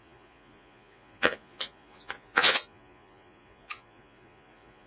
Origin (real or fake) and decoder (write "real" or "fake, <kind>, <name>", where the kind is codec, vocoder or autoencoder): fake, vocoder, Vocos